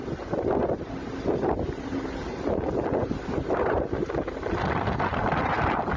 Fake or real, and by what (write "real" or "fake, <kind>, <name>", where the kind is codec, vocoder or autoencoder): real